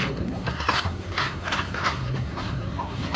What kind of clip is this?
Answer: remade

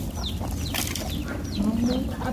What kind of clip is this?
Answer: recorded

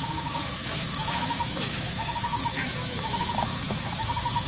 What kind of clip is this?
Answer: remade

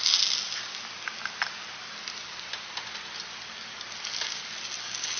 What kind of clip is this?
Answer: recorded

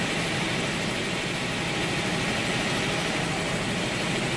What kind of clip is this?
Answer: recorded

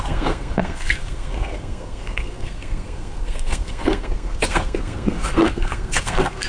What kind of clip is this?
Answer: remade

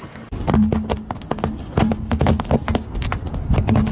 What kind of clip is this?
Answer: recorded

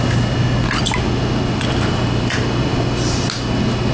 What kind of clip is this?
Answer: recorded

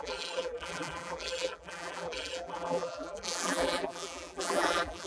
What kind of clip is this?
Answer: remade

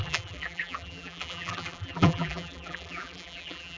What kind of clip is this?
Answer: remade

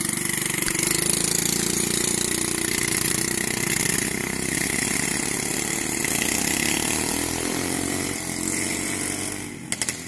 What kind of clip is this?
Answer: recorded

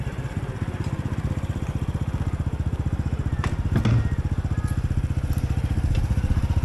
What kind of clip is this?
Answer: recorded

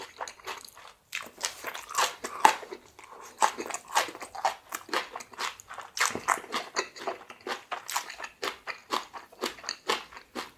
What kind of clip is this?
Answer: recorded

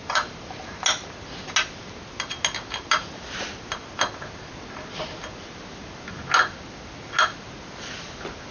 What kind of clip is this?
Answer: recorded